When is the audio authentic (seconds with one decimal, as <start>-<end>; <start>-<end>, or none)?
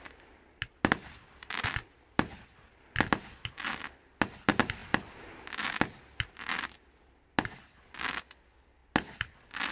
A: 0.0-9.7